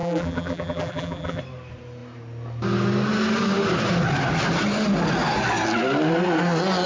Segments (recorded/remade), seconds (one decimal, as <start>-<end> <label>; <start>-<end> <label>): 0.0-1.4 remade; 1.4-6.9 recorded